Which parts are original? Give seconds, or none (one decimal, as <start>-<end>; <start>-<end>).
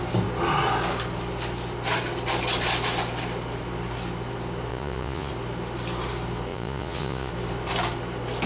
0.0-4.7; 5.3-6.5; 7.3-8.5